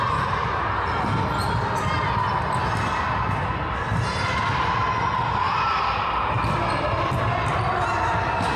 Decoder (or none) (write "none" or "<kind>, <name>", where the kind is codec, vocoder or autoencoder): none